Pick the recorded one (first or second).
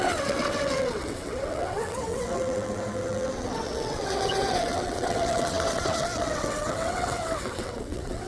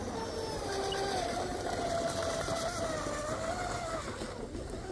second